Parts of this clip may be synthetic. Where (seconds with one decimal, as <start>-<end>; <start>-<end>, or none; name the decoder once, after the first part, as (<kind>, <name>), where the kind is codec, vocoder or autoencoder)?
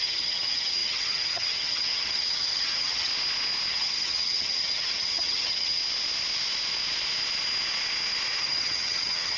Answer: 0.0-3.1 (vocoder, HiFi-GAN); 3.7-5.8; 8.4-9.4